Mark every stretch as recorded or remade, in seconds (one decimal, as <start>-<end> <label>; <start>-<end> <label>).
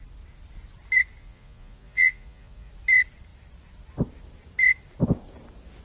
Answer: 0.0-1.2 recorded; 1.2-2.7 remade; 2.7-5.8 recorded